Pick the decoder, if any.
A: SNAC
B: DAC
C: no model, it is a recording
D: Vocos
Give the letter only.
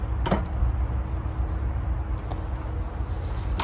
C